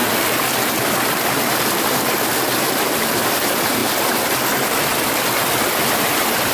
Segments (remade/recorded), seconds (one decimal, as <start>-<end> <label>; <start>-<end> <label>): 0.0-3.3 recorded; 3.3-3.8 remade; 3.8-5.9 recorded; 5.9-6.5 remade